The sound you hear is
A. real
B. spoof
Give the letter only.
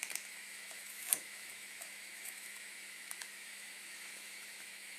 B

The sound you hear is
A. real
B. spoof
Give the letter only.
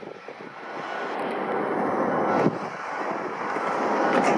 A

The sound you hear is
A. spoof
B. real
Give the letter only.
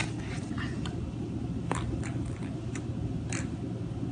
B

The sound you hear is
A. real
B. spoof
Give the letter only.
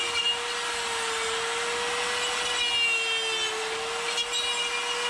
A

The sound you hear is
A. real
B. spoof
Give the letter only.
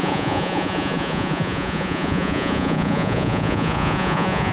B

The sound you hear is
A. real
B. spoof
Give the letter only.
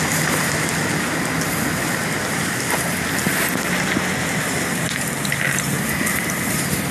A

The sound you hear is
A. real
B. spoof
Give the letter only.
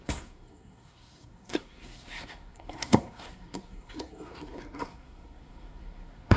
B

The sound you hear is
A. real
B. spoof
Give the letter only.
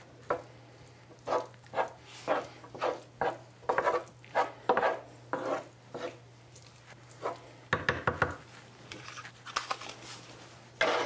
A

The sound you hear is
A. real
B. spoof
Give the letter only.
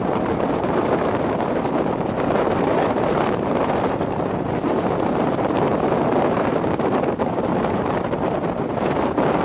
B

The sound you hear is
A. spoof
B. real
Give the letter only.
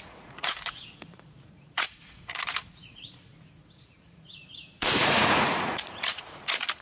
A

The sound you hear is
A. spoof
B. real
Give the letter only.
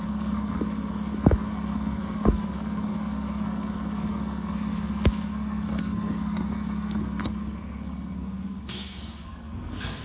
A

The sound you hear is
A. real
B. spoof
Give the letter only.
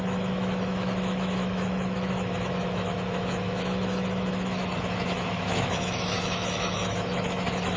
B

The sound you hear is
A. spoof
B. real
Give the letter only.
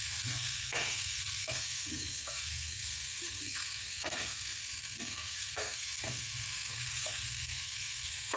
A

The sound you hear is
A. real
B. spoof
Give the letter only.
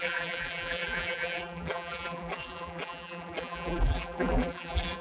B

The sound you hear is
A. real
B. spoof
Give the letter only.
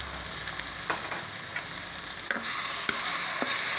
A